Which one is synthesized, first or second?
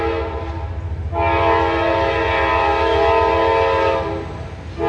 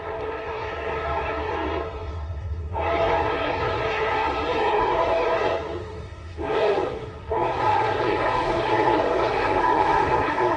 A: second